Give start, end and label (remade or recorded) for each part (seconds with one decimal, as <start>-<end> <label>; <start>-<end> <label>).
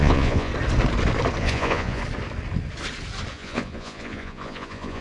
0.0-0.5 remade; 0.5-1.4 recorded; 1.4-2.0 remade; 2.0-3.3 recorded; 3.3-5.0 remade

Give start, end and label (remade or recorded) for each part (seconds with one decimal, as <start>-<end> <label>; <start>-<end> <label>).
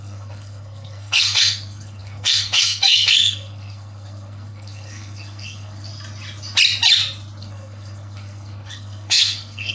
0.0-5.9 remade; 5.9-7.4 recorded; 7.4-9.7 remade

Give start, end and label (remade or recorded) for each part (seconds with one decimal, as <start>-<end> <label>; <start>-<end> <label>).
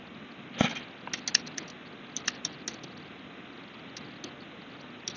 0.0-5.2 recorded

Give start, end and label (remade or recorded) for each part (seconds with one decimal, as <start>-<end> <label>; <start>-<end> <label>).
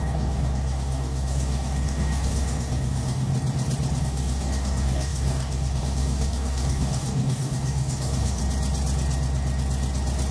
0.0-3.3 remade; 3.3-4.0 recorded; 4.0-8.4 remade; 8.4-10.3 recorded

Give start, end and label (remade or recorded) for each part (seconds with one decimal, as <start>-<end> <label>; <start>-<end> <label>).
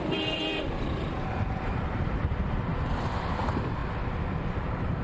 0.0-2.7 remade; 2.7-3.2 recorded; 3.2-3.8 remade; 3.8-4.6 recorded; 4.6-5.0 remade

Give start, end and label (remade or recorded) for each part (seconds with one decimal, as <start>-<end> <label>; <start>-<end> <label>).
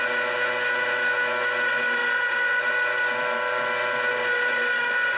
0.0-2.0 recorded; 2.0-2.7 remade; 2.7-5.2 recorded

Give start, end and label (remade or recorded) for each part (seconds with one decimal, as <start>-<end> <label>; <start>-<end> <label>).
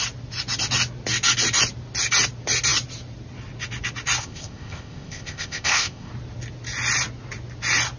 0.0-4.2 recorded; 4.2-6.1 remade; 6.1-8.0 recorded